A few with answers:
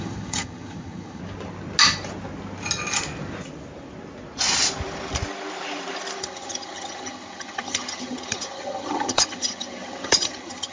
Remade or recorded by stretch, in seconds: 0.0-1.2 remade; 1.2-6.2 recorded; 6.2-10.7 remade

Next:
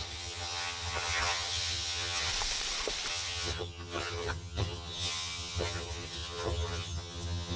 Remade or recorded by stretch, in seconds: 0.0-2.3 remade; 2.3-3.1 recorded; 3.1-7.6 remade

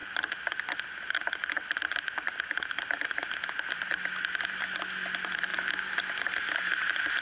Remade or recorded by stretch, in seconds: 0.0-7.2 recorded

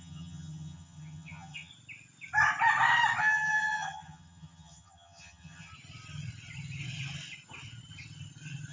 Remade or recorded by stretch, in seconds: 0.0-1.7 remade; 1.7-3.2 recorded; 3.2-5.7 remade; 5.7-8.7 recorded